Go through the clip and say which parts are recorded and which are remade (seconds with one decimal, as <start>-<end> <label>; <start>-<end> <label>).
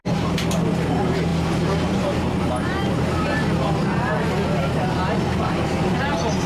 0.0-6.5 recorded